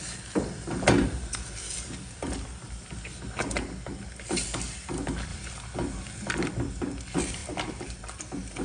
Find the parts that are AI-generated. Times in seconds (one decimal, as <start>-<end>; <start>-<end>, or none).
none